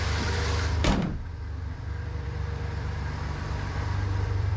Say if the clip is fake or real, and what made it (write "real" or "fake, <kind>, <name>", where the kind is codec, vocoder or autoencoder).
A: fake, vocoder, BigVGAN v2